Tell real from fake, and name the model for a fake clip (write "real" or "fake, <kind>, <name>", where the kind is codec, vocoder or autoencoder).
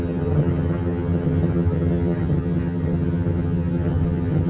fake, vocoder, HiFi-GAN